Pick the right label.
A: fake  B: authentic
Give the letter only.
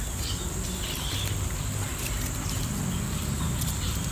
B